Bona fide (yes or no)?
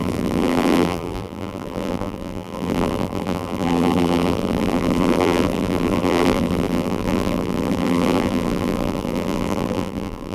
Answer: no